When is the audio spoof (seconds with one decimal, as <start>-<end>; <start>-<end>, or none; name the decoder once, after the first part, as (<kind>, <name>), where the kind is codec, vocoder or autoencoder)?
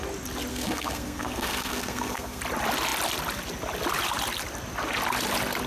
0.5-2.4 (codec, SNAC)